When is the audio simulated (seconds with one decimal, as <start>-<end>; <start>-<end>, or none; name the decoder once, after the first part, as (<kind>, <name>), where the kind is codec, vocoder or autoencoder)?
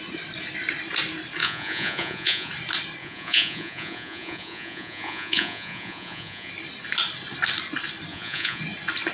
1.4-2.5 (vocoder, Vocos); 3.0-6.5; 8.1-8.6